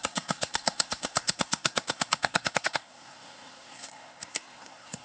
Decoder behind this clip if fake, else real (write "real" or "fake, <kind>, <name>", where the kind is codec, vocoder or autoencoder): fake, codec, SNAC